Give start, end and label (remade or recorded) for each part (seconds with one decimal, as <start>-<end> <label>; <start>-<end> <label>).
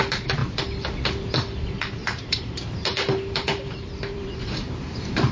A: 0.0-2.0 recorded; 2.0-5.3 remade